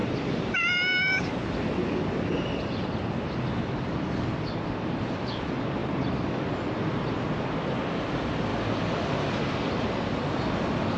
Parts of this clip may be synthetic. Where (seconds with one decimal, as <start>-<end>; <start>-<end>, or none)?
0.0-1.5